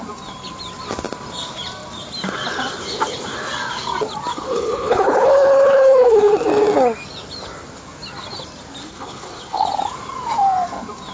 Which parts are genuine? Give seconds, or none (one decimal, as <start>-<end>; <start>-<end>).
0.0-4.3; 6.3-8.8; 9.7-11.1